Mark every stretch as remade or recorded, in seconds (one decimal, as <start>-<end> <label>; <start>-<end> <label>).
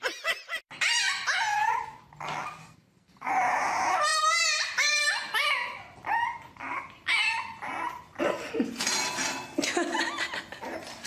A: 0.0-2.6 recorded; 2.6-3.3 remade; 3.3-11.1 recorded